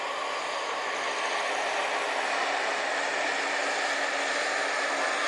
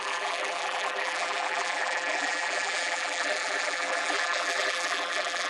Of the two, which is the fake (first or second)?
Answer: second